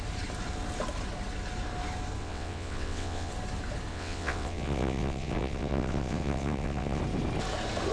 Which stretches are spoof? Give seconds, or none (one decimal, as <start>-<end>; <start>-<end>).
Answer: 2.2-3.3; 3.9-7.0